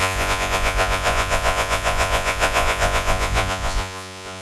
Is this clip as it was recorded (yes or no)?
no